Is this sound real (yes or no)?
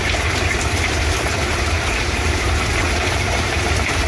no